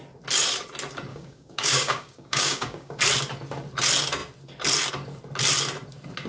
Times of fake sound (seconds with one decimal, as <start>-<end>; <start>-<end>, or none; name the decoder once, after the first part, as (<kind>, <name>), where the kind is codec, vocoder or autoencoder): 1.1-3.0 (codec, DAC)